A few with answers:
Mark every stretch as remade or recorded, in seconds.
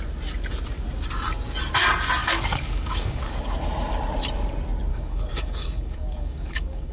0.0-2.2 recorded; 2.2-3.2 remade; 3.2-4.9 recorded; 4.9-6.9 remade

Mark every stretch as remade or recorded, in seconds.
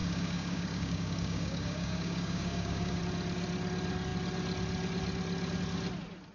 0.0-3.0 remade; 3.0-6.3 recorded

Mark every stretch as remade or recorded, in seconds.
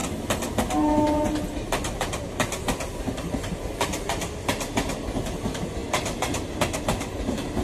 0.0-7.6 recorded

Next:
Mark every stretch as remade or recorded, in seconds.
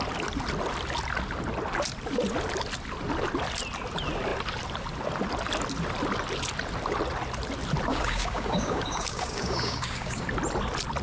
0.0-7.9 recorded; 7.9-10.2 remade; 10.2-11.0 recorded